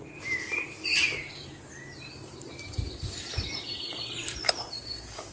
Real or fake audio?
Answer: fake